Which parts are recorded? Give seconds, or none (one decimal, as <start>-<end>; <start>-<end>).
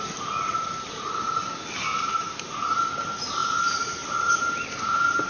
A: 0.0-1.9; 2.5-3.4; 4.3-5.3